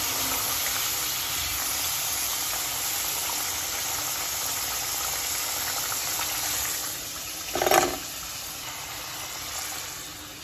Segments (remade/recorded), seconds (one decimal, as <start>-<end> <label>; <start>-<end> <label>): 0.0-1.5 recorded; 1.5-2.3 remade; 2.3-6.8 recorded; 6.8-7.5 remade; 7.5-10.4 recorded